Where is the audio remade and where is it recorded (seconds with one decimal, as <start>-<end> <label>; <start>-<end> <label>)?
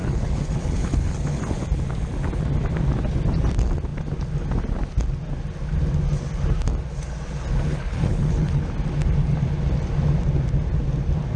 0.0-1.4 remade; 1.4-7.7 recorded; 7.7-8.6 remade; 8.6-11.4 recorded